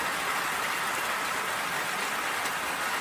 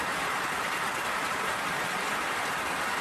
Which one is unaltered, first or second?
first